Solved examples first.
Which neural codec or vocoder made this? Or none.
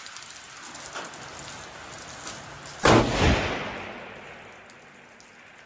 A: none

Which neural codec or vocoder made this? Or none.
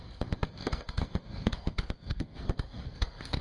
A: codec, SNAC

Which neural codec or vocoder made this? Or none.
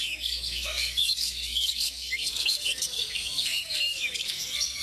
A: codec, SNAC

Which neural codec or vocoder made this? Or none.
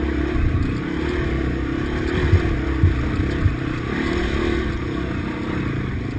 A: none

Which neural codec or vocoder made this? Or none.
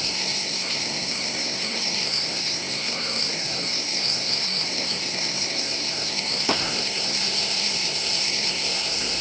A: codec, SNAC